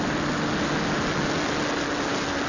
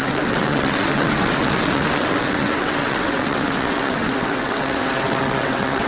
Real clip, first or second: first